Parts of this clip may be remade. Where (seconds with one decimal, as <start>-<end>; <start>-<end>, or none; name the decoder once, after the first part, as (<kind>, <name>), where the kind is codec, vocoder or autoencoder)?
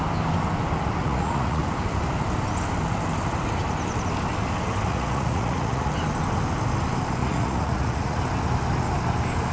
1.0-1.6 (vocoder, Vocos); 4.9-5.9; 7.2-8.2